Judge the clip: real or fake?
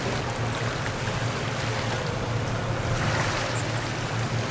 real